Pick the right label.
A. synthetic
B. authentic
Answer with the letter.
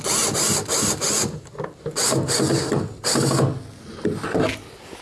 B